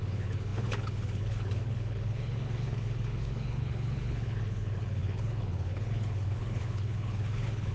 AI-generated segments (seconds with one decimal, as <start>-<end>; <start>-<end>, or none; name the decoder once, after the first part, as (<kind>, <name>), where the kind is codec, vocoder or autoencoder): 0.0-7.7 (codec, HILCodec)